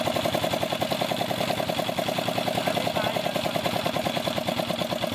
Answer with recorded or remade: recorded